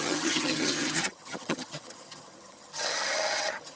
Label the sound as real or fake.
fake